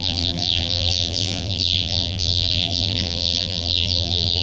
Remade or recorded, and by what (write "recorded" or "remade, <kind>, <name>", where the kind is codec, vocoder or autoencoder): remade, vocoder, BigVGAN v2